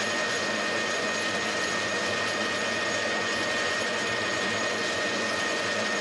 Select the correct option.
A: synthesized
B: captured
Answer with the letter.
A